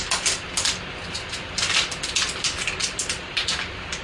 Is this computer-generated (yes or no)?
no